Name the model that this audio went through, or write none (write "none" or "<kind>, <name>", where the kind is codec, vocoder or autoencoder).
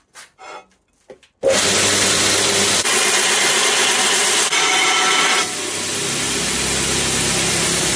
none